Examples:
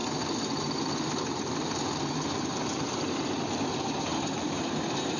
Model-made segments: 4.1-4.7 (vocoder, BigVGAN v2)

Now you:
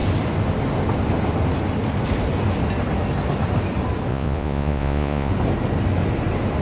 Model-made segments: 4.1-5.3 (vocoder, Vocos)